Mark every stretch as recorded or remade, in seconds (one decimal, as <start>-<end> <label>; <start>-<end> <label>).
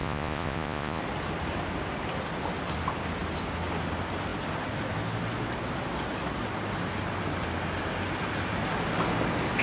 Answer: 0.0-1.0 remade; 1.0-9.6 recorded